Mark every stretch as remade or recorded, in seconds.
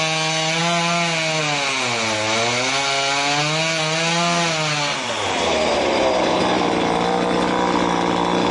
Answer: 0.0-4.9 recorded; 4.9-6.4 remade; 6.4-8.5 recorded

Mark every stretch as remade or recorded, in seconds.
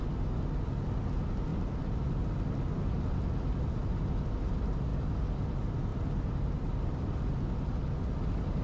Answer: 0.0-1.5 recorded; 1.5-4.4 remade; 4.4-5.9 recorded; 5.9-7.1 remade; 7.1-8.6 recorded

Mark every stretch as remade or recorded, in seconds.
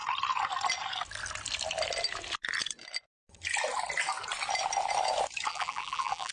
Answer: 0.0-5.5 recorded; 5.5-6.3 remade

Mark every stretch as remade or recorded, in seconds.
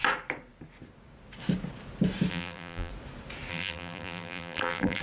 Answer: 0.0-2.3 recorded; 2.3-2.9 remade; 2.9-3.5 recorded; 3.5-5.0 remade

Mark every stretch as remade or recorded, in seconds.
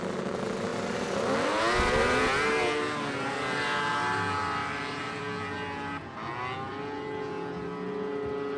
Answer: 0.0-4.6 recorded; 4.6-5.2 remade; 5.2-8.6 recorded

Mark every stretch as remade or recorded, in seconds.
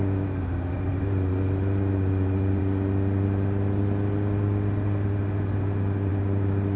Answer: 0.0-0.9 recorded; 0.9-2.6 remade; 2.6-6.1 recorded; 6.1-6.8 remade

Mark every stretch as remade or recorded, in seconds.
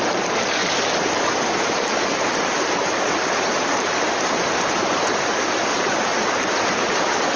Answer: 0.0-0.6 remade; 0.6-1.3 recorded; 1.3-6.1 remade; 6.1-6.6 recorded; 6.6-7.4 remade